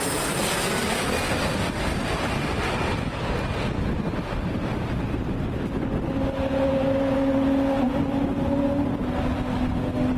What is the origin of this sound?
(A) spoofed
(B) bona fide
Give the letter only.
B